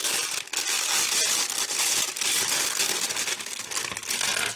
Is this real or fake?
real